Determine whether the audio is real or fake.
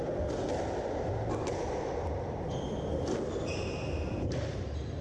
real